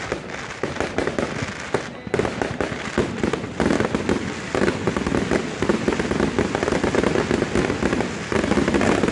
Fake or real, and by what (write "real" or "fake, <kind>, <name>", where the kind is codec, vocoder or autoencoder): real